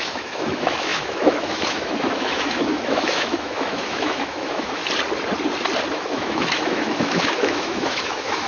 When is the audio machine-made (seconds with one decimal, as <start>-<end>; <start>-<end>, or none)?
0.0-4.8; 5.9-8.5